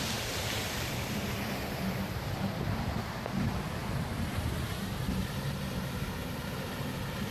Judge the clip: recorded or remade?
remade